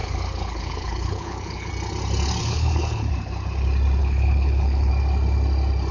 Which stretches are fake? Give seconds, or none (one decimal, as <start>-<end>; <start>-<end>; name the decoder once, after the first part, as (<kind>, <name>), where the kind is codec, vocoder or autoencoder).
0.0-1.7 (codec, HILCodec); 2.4-3.1; 4.0-4.9